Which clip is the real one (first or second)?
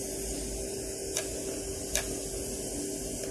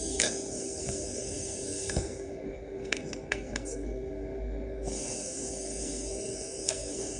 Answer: first